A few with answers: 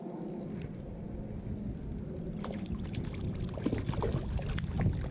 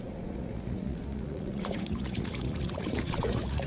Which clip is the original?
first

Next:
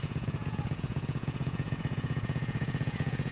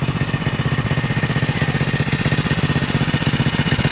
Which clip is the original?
second